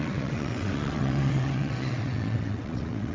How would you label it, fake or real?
fake